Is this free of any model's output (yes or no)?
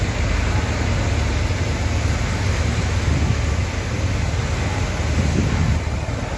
yes